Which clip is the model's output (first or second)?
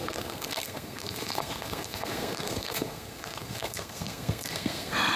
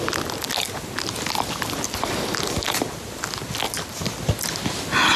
first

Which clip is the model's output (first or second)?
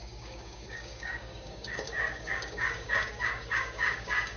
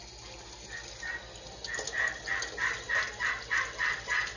first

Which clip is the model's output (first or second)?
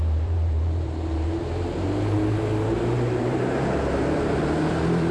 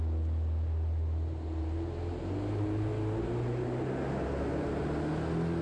first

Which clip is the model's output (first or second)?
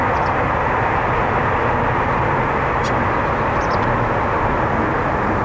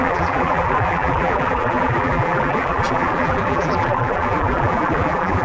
second